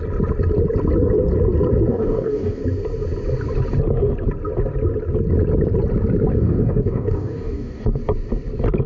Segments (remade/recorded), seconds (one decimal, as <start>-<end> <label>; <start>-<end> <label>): 0.0-1.9 recorded; 1.9-2.6 remade; 2.6-6.3 recorded; 6.3-8.0 remade; 8.0-8.9 recorded